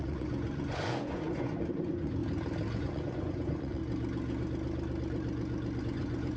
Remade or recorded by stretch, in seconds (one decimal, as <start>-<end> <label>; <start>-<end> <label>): 0.0-2.2 remade; 2.2-2.8 recorded; 2.8-3.8 remade; 3.8-5.8 recorded; 5.8-6.4 remade